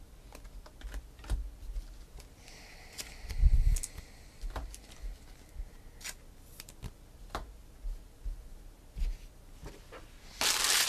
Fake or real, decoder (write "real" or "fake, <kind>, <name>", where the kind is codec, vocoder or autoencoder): real